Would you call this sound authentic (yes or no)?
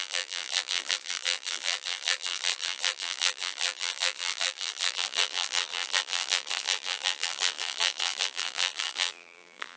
no